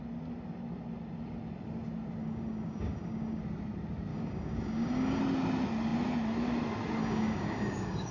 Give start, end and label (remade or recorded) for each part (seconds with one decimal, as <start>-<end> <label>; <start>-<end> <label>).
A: 0.0-2.2 recorded; 2.2-3.4 remade; 3.4-4.1 recorded; 4.1-5.2 remade; 5.2-7.0 recorded; 7.0-8.1 remade